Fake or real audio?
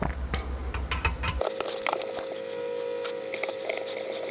real